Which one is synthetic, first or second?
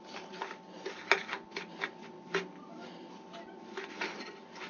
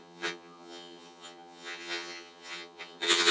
second